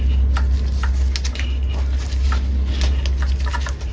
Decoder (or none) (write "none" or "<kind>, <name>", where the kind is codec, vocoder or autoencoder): none